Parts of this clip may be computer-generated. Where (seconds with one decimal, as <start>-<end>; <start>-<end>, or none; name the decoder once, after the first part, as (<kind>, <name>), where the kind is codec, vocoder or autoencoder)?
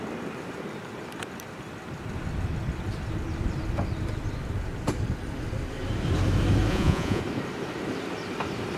6.7-7.2 (vocoder, Vocos)